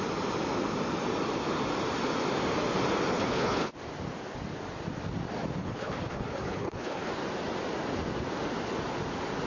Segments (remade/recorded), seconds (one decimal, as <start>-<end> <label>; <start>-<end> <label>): 0.0-3.1 recorded; 3.1-3.7 remade; 3.7-5.6 recorded; 5.6-7.1 remade; 7.1-9.5 recorded